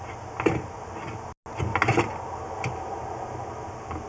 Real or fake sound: real